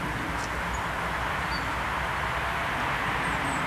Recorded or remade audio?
recorded